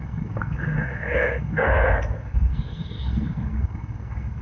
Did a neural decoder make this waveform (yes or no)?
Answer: yes